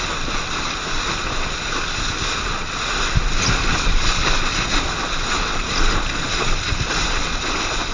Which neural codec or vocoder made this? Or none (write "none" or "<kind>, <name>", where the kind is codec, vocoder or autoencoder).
none